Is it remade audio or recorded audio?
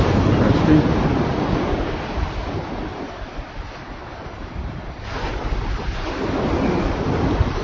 recorded